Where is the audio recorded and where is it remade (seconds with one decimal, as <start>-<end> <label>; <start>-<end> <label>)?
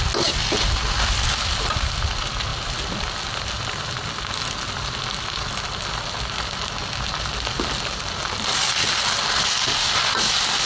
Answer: 0.0-10.7 recorded